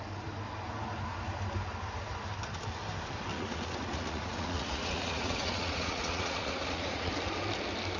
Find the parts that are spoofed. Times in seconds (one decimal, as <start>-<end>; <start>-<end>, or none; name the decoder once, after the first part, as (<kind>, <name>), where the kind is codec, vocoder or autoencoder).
3.3-7.1 (vocoder, Vocos)